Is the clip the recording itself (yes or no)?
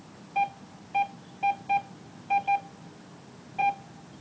yes